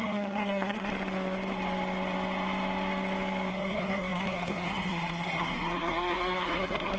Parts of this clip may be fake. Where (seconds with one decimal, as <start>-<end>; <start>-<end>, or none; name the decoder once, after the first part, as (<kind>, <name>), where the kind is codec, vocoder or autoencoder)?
0.0-0.9 (codec, SNAC); 3.5-7.0

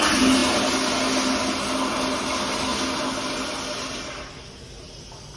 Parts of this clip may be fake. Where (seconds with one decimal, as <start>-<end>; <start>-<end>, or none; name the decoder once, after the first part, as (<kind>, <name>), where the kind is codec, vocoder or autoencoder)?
none

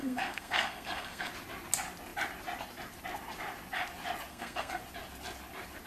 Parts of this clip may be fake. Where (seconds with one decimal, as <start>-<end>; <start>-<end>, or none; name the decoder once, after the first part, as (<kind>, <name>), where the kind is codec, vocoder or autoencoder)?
0.0-1.3 (codec, SNAC); 4.3-4.8

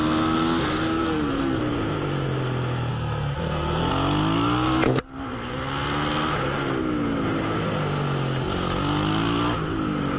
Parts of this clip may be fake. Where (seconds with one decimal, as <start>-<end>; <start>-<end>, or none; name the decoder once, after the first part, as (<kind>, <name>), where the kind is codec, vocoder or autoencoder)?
1.0-1.6 (codec, SNAC); 2.9-3.9

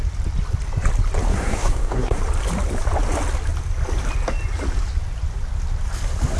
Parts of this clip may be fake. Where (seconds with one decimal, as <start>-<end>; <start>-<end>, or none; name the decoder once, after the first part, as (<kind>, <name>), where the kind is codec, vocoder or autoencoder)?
1.3-2.2 (codec, SNAC)